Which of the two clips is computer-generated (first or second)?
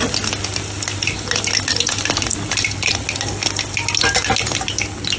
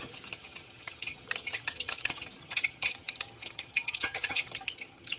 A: second